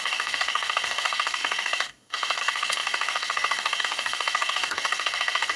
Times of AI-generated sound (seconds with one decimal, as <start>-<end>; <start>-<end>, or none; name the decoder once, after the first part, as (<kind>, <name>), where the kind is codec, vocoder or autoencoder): 0.0-5.6 (codec, DAC)